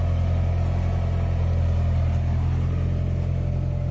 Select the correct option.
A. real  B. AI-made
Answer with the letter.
A